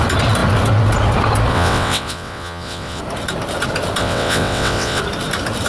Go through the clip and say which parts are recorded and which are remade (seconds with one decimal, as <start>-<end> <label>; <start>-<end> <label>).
0.0-1.5 recorded; 1.5-3.0 remade; 3.0-4.0 recorded; 4.0-5.0 remade; 5.0-5.7 recorded